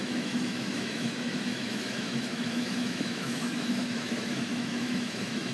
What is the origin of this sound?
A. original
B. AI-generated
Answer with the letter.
B